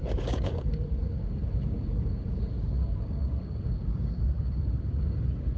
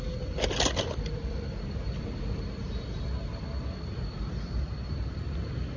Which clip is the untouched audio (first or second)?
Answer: second